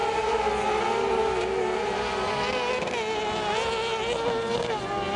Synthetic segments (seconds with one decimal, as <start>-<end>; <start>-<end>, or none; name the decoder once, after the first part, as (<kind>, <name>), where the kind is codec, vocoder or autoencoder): 0.0-0.5 (vocoder, BigVGAN v2)